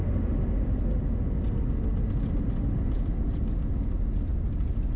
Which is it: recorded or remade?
recorded